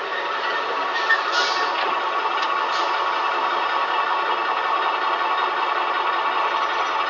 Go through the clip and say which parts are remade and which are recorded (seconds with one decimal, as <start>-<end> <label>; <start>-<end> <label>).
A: 0.0-7.1 recorded